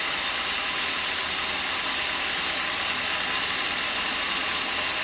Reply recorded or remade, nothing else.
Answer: recorded